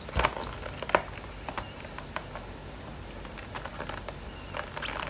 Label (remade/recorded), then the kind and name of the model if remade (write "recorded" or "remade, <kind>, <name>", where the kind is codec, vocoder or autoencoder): recorded